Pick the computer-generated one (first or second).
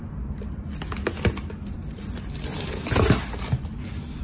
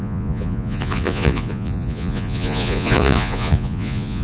second